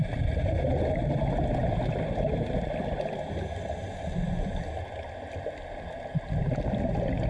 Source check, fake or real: real